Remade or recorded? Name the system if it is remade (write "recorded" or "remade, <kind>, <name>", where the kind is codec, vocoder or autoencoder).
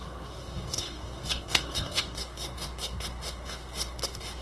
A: remade, codec, SNAC